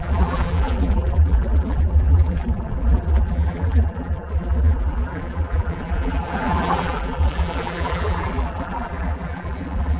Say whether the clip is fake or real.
fake